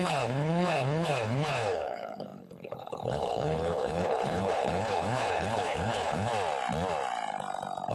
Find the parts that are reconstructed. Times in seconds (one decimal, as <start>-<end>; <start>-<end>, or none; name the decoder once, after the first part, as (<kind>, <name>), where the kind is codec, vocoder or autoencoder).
0.0-6.3 (codec, HILCodec)